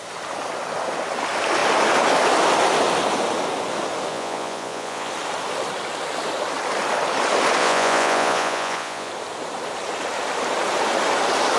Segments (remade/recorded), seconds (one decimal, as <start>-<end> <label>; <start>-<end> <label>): 0.0-4.1 recorded; 4.1-5.1 remade; 5.1-7.6 recorded; 7.6-9.1 remade; 9.1-11.6 recorded